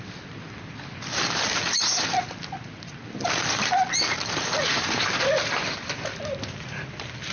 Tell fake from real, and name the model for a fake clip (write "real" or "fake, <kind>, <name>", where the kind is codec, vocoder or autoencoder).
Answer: real